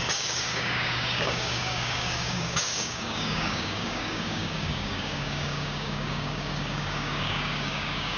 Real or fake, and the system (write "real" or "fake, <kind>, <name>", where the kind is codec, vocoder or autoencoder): fake, codec, DAC